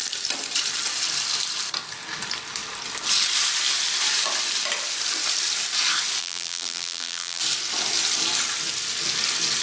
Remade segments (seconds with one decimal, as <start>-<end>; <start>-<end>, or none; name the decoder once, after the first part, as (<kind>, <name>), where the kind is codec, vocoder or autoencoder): 6.2-7.4 (vocoder, BigVGAN v2)